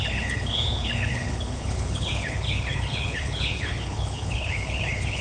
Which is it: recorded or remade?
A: remade